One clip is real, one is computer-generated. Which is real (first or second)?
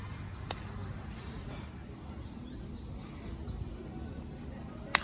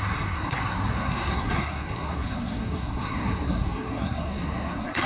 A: first